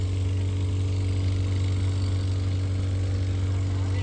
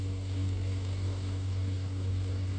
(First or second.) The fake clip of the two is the second